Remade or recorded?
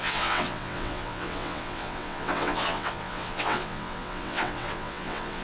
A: remade